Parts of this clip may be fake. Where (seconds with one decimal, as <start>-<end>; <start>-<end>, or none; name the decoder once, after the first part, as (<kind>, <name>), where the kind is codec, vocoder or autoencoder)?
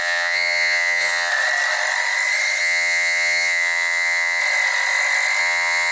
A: 0.0-1.3 (vocoder, WaveNeXt); 2.6-4.4; 5.4-5.9